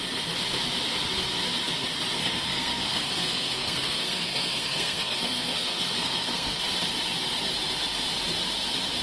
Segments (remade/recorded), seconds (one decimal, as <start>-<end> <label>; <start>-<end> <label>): 0.0-2.2 recorded; 2.2-6.6 remade; 6.6-9.0 recorded

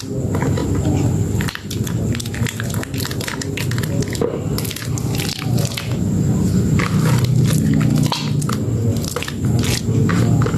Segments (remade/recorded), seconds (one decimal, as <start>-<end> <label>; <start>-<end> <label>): 0.0-10.6 recorded

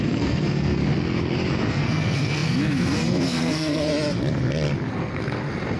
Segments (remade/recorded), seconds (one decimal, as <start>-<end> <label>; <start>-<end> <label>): 0.0-0.8 remade; 0.8-1.7 recorded; 1.7-3.9 remade; 3.9-4.9 recorded; 4.9-5.8 remade

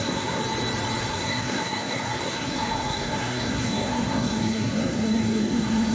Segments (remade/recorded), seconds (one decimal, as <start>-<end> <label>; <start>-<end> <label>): 0.0-0.4 remade; 0.4-1.0 recorded; 1.0-5.9 remade

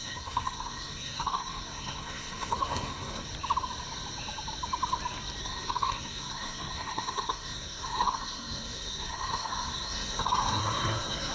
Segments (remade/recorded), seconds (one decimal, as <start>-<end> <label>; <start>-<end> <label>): 0.0-3.3 remade; 3.3-5.4 recorded; 5.4-11.3 remade